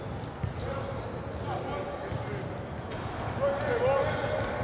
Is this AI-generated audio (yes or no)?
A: no